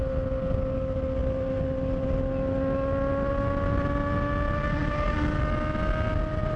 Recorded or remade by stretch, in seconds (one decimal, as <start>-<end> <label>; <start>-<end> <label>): 0.0-6.6 recorded